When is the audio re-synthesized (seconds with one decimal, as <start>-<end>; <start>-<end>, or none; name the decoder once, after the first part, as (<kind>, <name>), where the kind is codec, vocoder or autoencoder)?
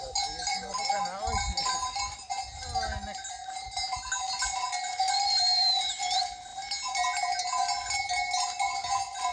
none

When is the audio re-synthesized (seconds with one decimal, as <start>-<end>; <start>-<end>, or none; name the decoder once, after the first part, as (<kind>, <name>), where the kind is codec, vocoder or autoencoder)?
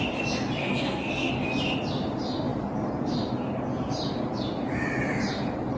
0.6-1.3 (codec, SNAC)